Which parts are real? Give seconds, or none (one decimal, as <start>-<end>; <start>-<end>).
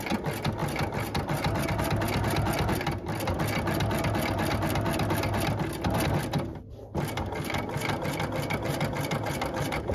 0.0-9.9